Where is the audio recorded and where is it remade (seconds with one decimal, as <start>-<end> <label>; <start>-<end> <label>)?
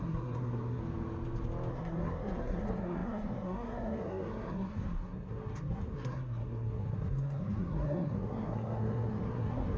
0.0-0.8 remade; 0.8-1.7 recorded; 1.7-9.8 remade